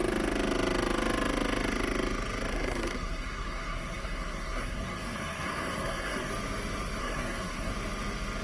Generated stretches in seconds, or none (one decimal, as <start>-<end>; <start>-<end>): 2.5-6.3; 7.0-7.7